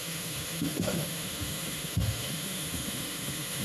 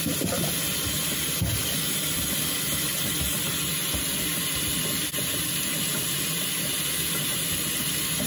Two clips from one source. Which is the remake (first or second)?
first